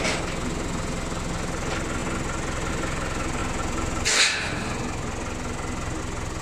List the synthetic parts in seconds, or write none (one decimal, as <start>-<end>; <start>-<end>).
none